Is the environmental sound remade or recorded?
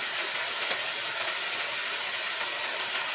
recorded